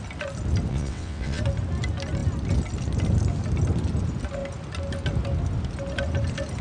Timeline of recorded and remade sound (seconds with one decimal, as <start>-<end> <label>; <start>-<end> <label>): 0.0-0.7 recorded; 0.7-1.4 remade; 1.4-6.6 recorded